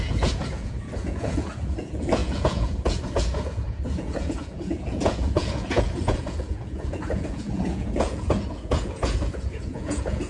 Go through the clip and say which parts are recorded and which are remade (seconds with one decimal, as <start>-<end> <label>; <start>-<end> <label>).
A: 0.0-10.3 remade